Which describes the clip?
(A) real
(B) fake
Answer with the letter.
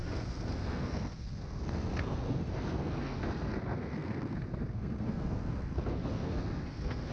B